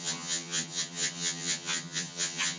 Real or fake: fake